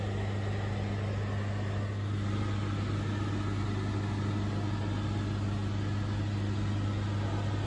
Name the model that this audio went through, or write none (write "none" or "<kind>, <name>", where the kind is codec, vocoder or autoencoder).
none